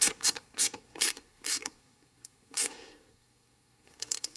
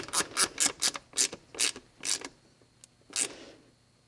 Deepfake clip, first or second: first